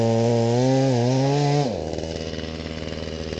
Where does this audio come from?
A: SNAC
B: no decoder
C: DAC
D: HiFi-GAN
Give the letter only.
B